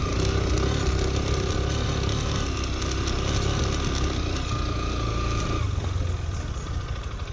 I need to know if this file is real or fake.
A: real